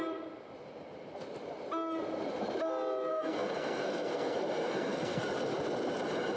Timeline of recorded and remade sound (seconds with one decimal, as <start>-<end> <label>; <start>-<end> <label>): 0.0-3.1 recorded; 3.1-5.2 remade; 5.2-6.4 recorded